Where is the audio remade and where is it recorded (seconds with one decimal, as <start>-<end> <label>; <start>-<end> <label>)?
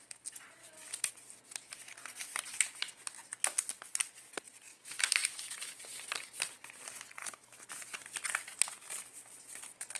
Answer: 0.0-0.6 recorded; 0.6-1.1 remade; 1.1-4.7 recorded; 4.7-5.8 remade; 5.8-7.2 recorded; 7.2-7.7 remade; 7.7-10.0 recorded